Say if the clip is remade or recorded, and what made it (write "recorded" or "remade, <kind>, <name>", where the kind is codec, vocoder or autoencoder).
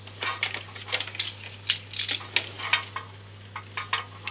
recorded